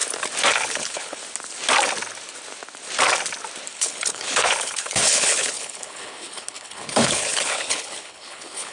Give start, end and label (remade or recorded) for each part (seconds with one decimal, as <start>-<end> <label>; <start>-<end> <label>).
0.0-0.5 recorded; 0.5-1.2 remade; 1.2-3.7 recorded; 3.7-8.7 remade